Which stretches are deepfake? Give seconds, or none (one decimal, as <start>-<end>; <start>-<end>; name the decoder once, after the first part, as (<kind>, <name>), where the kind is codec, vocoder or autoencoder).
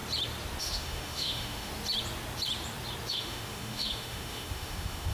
0.6-1.7 (autoencoder, DAC-VAE); 3.1-5.1